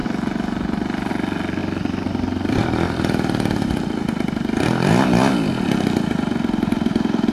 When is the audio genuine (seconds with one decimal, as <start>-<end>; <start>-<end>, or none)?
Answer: 0.0-7.3